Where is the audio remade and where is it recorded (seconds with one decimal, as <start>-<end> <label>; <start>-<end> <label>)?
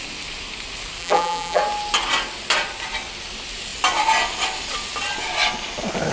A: 0.0-1.0 recorded; 1.0-1.6 remade; 1.6-6.1 recorded